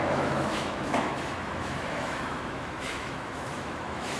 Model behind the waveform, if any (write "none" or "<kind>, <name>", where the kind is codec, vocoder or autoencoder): autoencoder, DAC-VAE